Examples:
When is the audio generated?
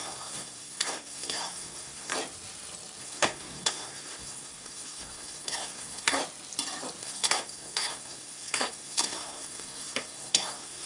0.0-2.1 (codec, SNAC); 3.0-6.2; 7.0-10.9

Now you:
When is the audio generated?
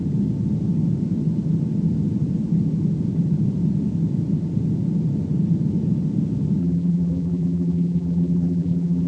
6.6-9.1 (vocoder, BigVGAN v2)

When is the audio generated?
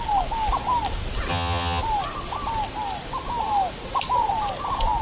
1.3-1.8 (vocoder, HiFi-GAN)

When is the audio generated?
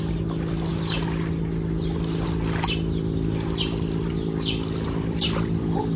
none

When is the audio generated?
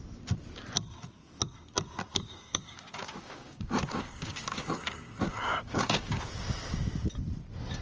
2.1-6.3 (codec, DAC)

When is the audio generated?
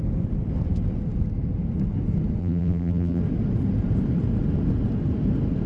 2.4-3.2 (vocoder, BigVGAN v2)